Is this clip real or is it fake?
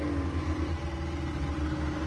real